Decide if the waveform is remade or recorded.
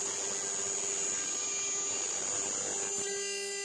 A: recorded